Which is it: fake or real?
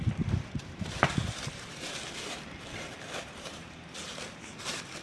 fake